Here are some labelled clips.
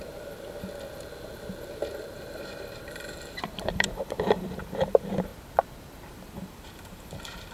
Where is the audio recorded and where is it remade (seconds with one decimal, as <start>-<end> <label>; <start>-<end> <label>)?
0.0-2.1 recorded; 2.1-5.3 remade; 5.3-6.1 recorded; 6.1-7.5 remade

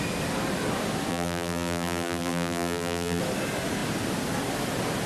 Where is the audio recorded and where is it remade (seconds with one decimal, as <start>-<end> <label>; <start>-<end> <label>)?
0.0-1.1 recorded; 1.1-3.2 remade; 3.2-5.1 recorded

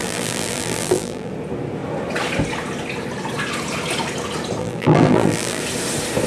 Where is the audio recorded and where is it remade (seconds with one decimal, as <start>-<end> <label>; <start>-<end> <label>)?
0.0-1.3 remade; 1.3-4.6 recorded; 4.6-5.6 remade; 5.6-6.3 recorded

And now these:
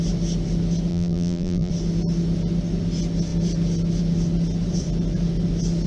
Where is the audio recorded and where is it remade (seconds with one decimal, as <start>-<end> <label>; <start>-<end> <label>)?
0.0-0.9 recorded; 0.9-1.7 remade; 1.7-5.9 recorded

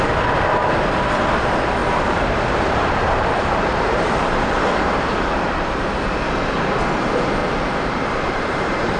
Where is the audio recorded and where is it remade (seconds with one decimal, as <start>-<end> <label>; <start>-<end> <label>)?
0.0-1.8 recorded; 1.8-6.0 remade; 6.0-7.4 recorded; 7.4-9.0 remade